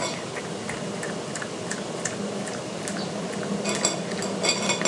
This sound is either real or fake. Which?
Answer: real